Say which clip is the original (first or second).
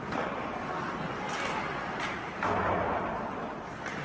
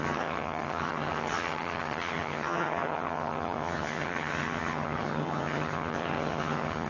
first